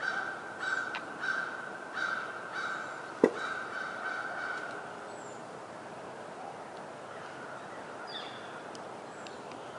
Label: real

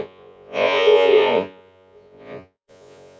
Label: fake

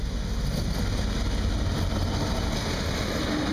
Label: real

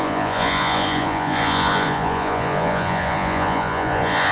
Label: fake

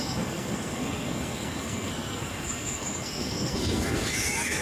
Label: fake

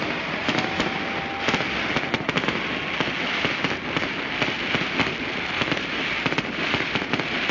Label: real